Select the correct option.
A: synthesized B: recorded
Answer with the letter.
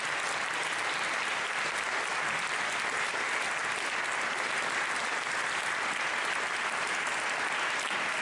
B